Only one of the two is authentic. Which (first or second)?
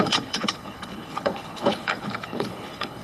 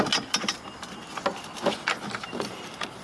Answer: second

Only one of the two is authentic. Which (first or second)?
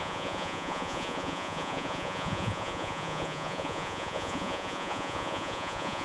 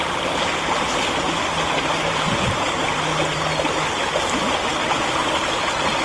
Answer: second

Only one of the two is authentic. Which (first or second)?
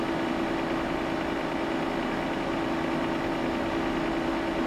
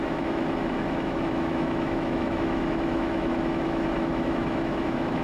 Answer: first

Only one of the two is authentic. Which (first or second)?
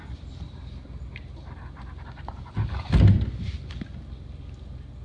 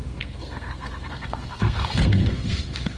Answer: first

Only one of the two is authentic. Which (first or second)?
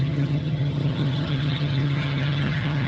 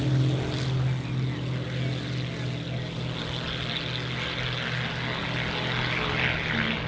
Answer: second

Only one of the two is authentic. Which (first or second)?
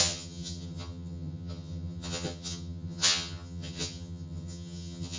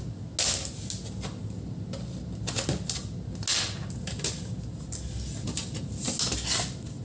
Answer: second